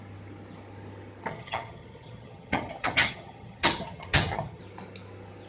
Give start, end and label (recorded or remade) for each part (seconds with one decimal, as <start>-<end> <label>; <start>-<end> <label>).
0.0-1.3 recorded; 1.3-4.6 remade; 4.6-5.5 recorded